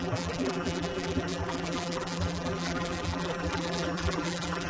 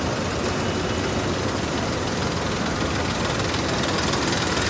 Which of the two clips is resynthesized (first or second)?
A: first